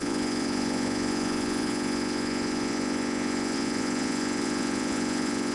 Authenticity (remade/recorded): remade